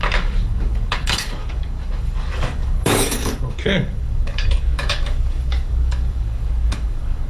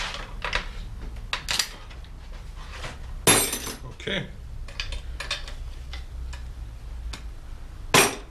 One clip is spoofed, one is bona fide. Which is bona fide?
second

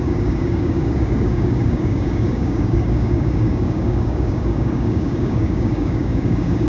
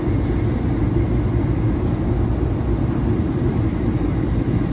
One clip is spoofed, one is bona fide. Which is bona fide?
second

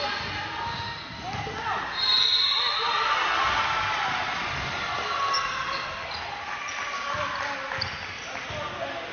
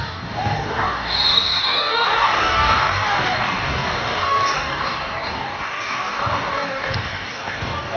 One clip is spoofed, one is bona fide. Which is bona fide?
first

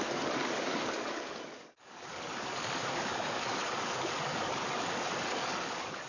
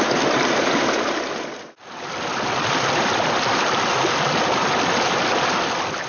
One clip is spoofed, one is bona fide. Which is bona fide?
second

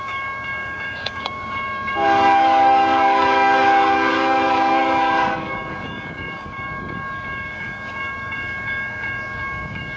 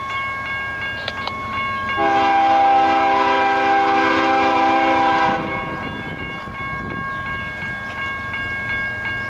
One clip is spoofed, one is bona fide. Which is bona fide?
second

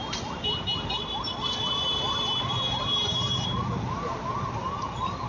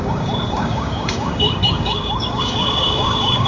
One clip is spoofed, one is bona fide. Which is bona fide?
first